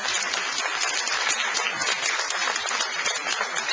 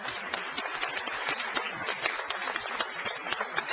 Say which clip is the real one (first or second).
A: first